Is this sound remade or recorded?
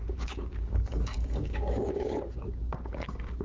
remade